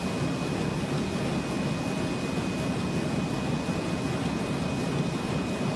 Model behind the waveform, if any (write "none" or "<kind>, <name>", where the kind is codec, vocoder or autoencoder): none